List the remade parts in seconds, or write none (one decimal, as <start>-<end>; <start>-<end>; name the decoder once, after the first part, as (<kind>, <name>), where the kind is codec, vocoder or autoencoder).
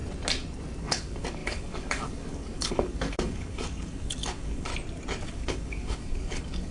0.8-4.7 (codec, DAC); 5.3-6.7